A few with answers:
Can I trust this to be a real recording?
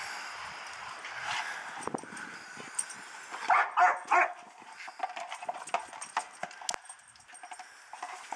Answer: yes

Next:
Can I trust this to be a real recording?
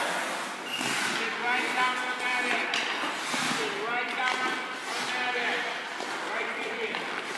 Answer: yes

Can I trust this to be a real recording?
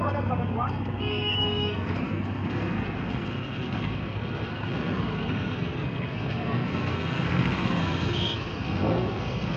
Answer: no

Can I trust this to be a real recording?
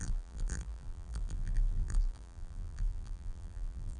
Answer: no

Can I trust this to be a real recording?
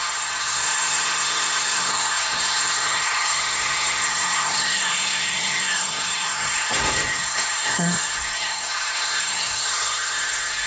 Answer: no